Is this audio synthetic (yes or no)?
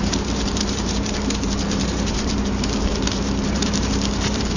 yes